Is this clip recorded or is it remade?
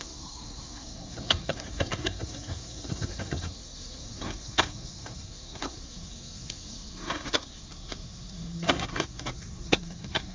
remade